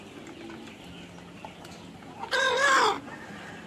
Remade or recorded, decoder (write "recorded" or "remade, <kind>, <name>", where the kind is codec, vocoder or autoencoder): recorded